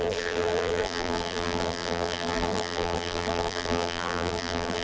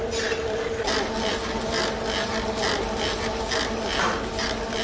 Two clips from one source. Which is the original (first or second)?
second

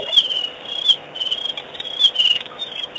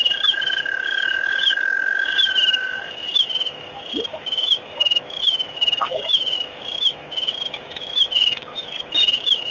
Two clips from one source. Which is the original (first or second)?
first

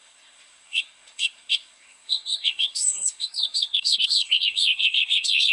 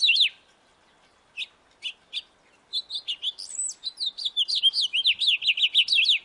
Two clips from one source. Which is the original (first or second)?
second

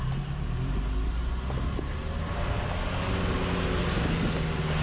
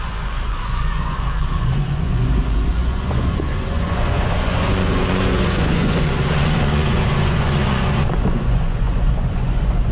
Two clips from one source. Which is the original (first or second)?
first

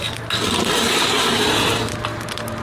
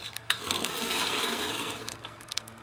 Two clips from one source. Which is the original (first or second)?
first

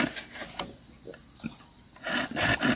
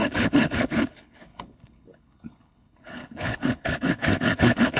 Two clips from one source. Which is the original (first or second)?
first